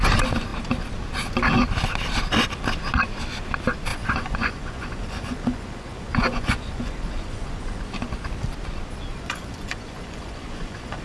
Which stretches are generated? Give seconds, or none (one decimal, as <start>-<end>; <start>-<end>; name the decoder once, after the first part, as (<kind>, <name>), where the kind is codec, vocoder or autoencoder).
3.9-7.8 (vocoder, Vocos); 9.1-11.0